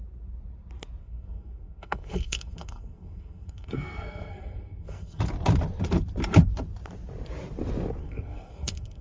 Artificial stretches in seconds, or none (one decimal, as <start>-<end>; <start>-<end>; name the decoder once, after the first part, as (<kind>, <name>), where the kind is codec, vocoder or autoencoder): 1.0-5.2 (codec, SNAC); 8.0-9.0